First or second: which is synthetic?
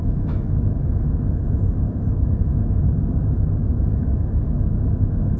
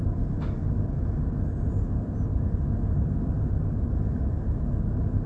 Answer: first